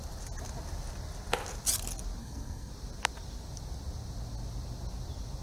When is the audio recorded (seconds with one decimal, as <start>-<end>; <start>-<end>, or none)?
0.0-2.2; 2.7-5.4